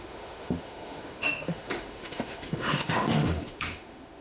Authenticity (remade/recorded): remade